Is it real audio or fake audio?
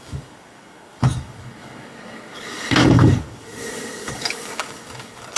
fake